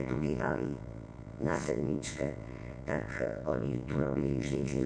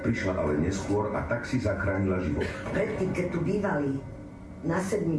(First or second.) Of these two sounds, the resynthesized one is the first